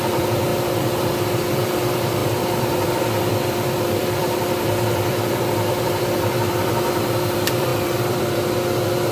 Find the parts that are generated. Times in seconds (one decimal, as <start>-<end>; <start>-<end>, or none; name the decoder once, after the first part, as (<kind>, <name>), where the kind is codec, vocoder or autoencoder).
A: 0.0-9.1 (vocoder, BigVGAN v2)